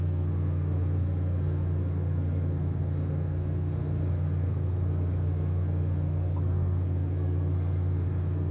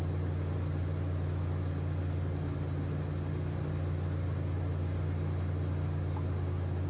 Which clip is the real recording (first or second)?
second